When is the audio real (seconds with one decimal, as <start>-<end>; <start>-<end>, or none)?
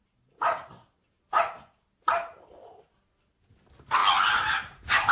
0.0-5.1